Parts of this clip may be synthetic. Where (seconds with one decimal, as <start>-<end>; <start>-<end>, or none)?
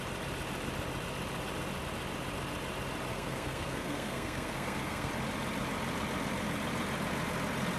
3.1-5.1